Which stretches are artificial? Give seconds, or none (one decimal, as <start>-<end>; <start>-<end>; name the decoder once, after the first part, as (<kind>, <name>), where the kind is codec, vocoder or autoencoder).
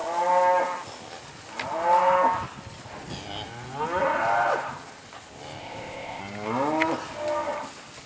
5.6-6.2 (codec, ZipCodec)